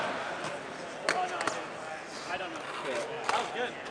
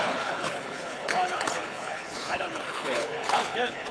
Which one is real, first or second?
first